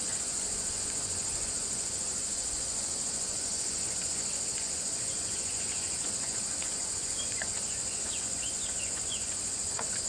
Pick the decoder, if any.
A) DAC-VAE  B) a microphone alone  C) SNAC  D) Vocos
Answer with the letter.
D